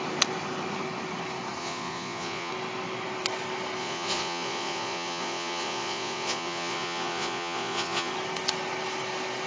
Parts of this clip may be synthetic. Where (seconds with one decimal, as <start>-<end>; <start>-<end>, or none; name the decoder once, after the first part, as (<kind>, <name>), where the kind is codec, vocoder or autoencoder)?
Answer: 1.6-2.5 (vocoder, Vocos); 3.8-8.1